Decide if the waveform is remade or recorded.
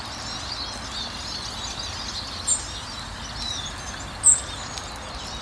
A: recorded